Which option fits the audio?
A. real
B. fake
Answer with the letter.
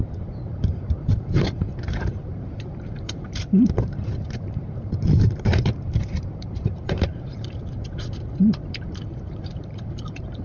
B